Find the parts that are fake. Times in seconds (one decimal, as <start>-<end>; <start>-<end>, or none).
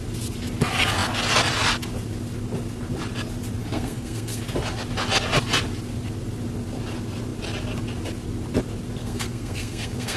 3.6-4.4; 9.0-10.2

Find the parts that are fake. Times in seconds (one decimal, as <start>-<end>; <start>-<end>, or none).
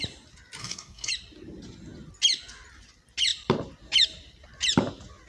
0.6-1.1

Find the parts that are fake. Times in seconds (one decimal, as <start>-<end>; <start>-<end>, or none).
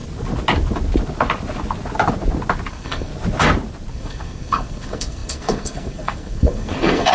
2.7-3.1; 3.9-7.1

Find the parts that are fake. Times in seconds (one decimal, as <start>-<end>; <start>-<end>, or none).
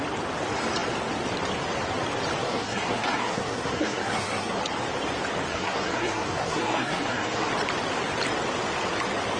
2.4-4.6; 5.5-7.5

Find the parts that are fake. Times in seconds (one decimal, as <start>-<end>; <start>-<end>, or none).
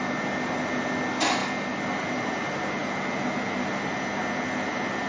none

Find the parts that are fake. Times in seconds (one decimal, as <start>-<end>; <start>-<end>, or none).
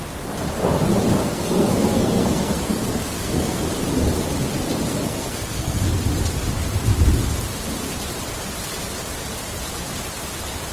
1.2-3.6; 4.9-5.9